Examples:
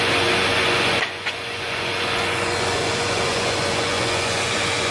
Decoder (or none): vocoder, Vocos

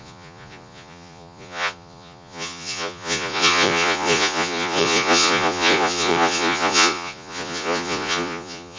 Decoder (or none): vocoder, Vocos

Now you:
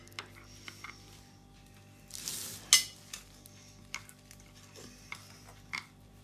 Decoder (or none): none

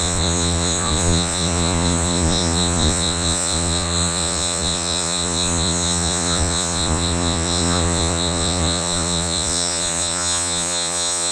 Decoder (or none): vocoder, Vocos